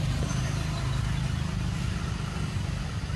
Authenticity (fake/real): real